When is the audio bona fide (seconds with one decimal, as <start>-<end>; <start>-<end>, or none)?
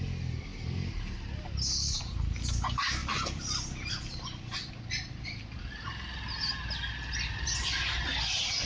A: 0.0-3.0; 4.7-8.7